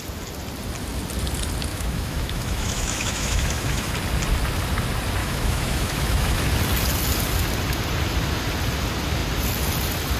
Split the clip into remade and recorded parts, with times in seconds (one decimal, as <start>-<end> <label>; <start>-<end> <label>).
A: 0.0-1.7 recorded; 1.7-3.9 remade; 3.9-5.2 recorded; 5.2-6.4 remade; 6.4-10.2 recorded